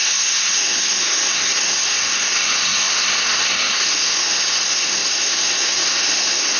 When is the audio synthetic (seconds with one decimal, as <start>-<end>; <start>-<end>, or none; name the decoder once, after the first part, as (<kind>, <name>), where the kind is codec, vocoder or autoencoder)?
0.0-6.6 (codec, SNAC)